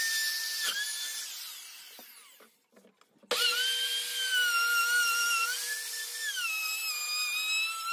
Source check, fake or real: real